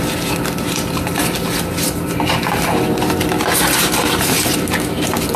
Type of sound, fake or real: real